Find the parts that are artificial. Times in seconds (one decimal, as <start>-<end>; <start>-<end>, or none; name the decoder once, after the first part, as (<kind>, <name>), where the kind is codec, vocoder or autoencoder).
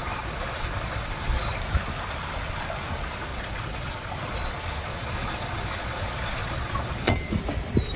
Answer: 0.0-1.5 (vocoder, Vocos); 3.3-4.5; 4.9-7.1